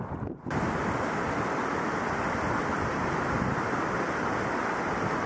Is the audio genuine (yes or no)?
yes